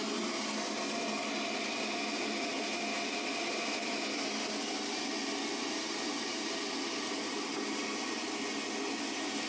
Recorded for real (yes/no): yes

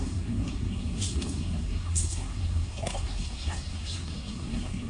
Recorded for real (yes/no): no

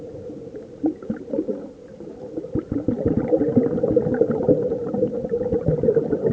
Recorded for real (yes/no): yes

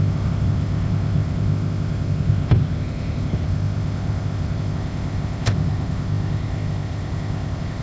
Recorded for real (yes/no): no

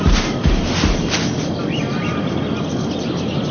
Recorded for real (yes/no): yes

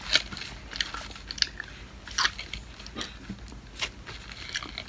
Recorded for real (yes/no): yes